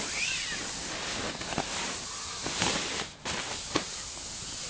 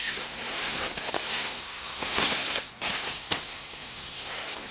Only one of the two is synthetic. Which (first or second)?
second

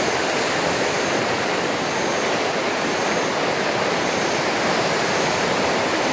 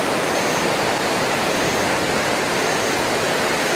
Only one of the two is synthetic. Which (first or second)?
first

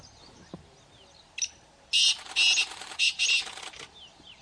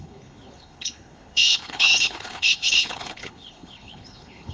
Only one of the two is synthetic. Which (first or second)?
second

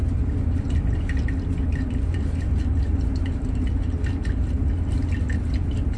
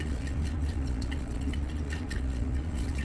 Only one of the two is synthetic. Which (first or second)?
second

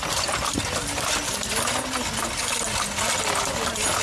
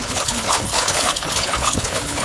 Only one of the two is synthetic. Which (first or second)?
second